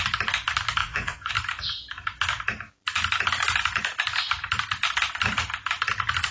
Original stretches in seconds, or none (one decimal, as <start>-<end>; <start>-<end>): 0.0-0.8; 1.3-6.3